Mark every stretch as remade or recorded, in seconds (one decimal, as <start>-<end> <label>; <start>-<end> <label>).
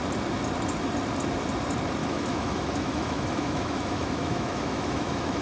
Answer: 0.0-2.0 recorded; 2.0-5.4 remade